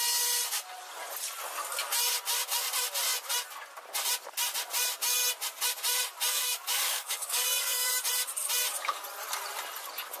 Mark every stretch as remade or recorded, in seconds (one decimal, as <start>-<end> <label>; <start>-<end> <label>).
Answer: 0.0-6.3 recorded; 6.3-7.9 remade; 7.9-10.2 recorded